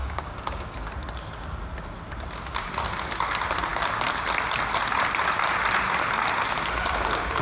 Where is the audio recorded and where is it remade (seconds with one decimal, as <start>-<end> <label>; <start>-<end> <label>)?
0.0-0.9 remade; 0.9-7.4 recorded